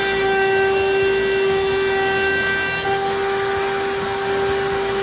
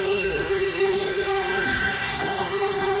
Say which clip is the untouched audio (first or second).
first